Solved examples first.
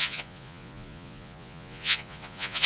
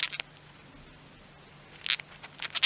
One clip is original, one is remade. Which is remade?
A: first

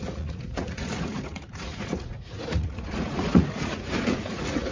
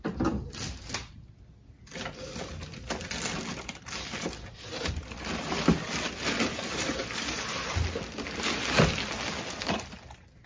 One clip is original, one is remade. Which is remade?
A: first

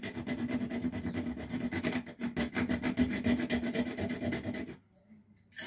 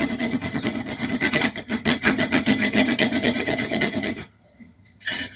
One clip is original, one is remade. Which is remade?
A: second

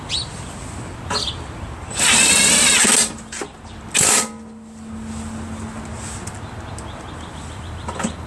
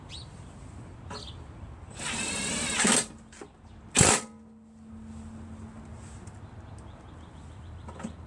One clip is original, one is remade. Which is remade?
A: second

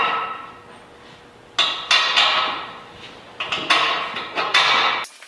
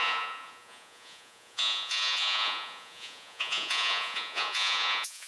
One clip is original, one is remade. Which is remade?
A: second